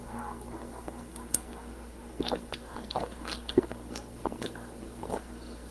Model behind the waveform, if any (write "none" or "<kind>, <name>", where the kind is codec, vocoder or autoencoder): codec, SNAC